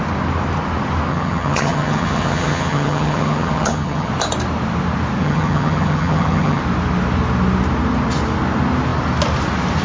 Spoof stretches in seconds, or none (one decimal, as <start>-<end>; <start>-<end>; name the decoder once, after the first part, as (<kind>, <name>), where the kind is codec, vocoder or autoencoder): 1.1-4.1 (vocoder, HiFi-GAN); 5.2-6.6